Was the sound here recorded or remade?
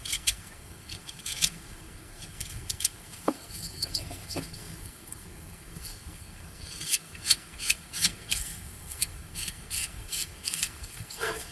remade